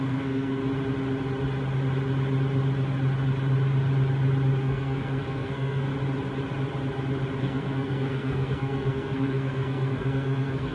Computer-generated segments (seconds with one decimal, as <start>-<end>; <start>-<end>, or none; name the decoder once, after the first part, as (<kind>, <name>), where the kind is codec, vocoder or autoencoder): 0.0-0.6 (codec, SNAC); 4.6-5.9; 7.4-10.7